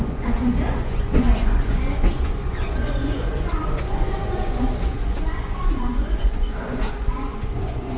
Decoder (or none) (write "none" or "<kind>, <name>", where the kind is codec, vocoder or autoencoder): vocoder, Vocos